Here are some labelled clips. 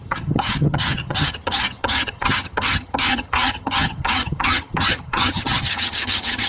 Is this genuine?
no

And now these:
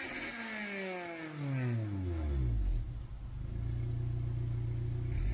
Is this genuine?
yes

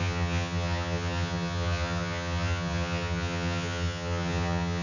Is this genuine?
no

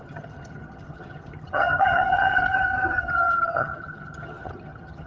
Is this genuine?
no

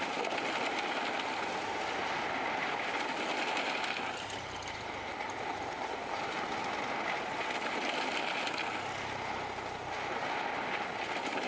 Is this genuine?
yes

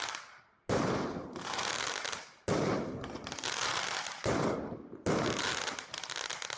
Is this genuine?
yes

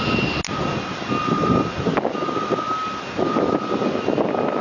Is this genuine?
yes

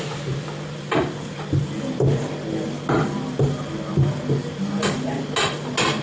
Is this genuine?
yes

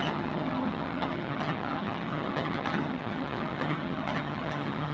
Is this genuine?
no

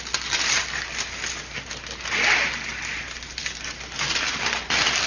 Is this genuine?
yes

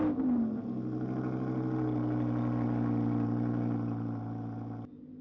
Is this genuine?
yes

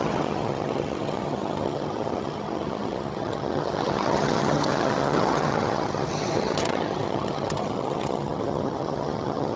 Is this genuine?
no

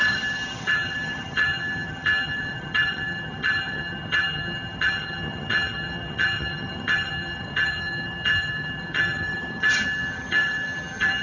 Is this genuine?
no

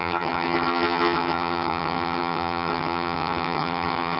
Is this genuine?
no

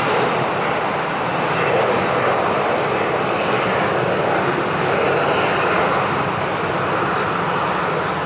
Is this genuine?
yes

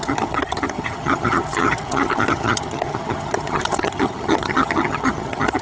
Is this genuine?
no